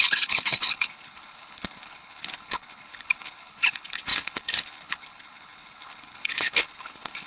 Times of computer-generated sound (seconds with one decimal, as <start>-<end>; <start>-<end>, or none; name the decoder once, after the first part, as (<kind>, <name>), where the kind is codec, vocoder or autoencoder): 0.0-7.3 (codec, HILCodec)